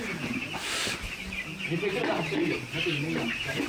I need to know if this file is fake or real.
real